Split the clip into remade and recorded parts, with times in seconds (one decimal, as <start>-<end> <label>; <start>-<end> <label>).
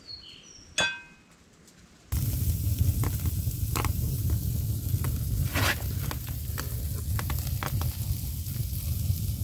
0.0-9.4 recorded